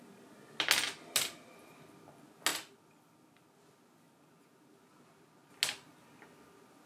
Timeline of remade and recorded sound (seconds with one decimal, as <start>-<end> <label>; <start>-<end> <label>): 0.0-6.9 recorded